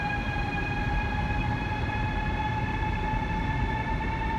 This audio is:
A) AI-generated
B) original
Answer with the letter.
A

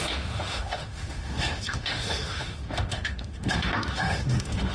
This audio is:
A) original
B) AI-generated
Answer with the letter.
B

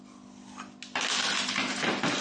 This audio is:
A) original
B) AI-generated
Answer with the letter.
A